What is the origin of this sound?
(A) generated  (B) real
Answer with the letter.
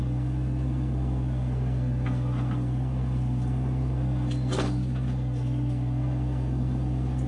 A